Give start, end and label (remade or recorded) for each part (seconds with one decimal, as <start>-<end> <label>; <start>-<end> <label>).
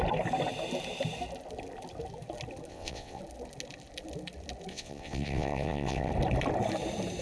0.0-2.7 recorded; 2.7-3.2 remade; 3.2-4.7 recorded; 4.7-6.1 remade; 6.1-7.2 recorded